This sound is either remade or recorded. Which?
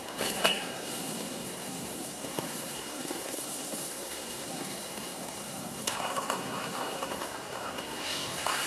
remade